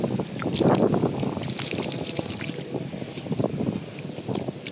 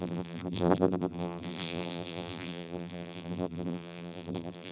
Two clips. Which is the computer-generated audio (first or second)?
second